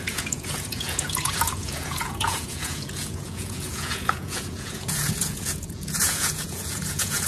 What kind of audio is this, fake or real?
fake